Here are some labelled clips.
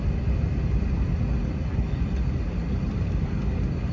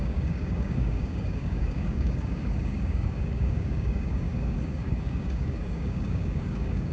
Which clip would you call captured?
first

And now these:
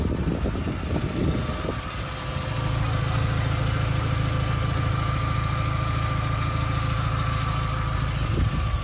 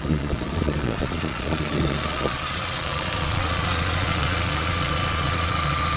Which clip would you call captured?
first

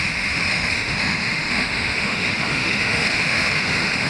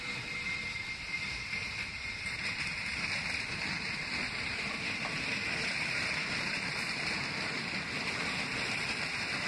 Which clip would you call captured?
second